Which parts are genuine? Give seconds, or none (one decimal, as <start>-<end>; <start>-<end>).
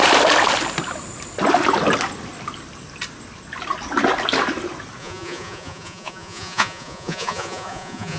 0.0-5.0